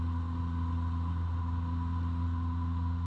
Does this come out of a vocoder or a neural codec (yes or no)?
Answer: no